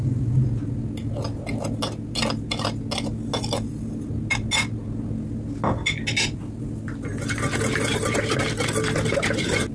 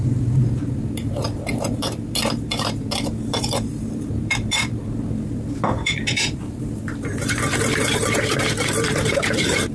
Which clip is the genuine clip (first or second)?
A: first